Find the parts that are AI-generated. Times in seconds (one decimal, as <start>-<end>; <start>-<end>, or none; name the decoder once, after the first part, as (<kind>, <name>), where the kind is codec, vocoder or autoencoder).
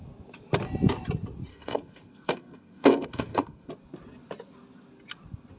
1.5-3.7 (codec, SNAC)